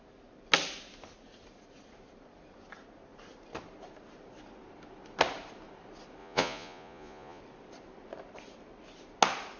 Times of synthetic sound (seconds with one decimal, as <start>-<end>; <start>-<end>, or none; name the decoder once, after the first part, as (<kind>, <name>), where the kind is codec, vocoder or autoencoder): 6.2-7.4 (vocoder, Vocos)